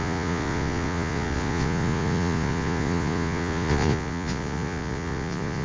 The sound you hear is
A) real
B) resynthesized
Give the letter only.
B